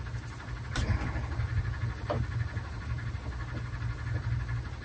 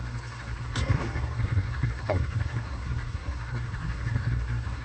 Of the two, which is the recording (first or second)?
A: first